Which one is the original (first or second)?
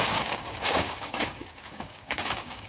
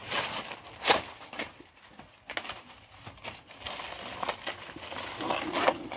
second